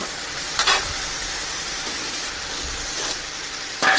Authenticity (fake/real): real